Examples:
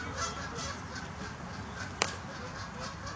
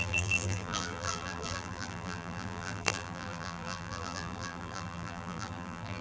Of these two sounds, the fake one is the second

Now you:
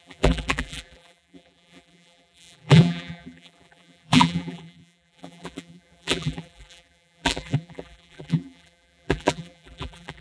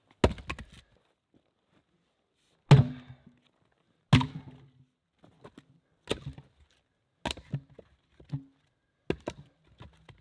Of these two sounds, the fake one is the first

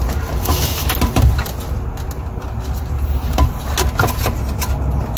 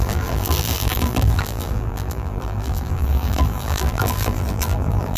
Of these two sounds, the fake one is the second